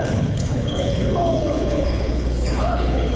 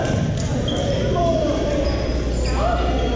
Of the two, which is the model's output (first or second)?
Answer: first